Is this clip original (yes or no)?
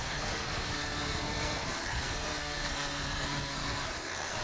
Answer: no